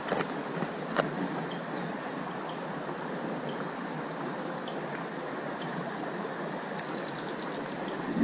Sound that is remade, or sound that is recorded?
recorded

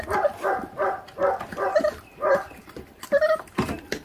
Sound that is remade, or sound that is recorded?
remade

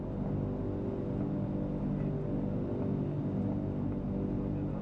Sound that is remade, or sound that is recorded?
recorded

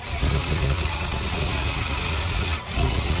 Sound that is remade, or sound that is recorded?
remade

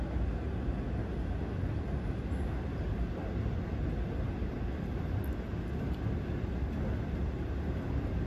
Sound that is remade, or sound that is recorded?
recorded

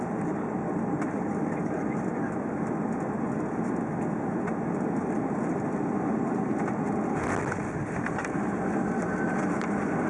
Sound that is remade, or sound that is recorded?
recorded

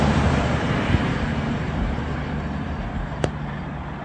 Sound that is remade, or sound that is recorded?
remade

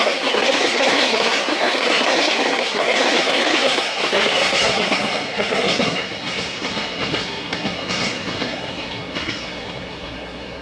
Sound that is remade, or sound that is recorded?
remade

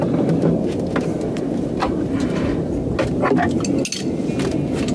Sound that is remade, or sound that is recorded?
recorded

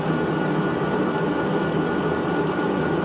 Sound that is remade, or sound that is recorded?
recorded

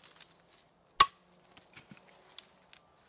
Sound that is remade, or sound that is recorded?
recorded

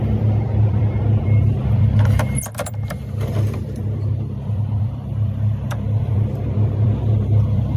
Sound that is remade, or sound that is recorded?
remade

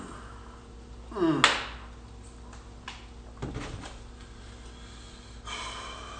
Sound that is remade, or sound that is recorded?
recorded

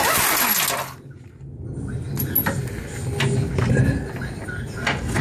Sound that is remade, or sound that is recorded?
recorded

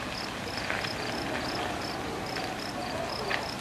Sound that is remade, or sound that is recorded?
recorded